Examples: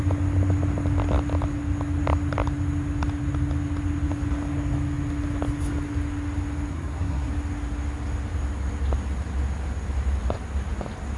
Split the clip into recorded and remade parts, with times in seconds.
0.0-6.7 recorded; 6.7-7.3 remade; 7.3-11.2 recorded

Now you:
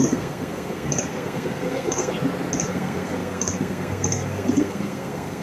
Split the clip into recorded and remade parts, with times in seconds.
0.0-2.1 remade; 2.1-2.7 recorded; 2.7-5.4 remade